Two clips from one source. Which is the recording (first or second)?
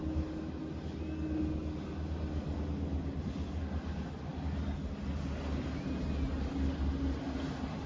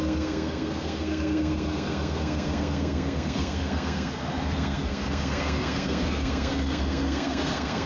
first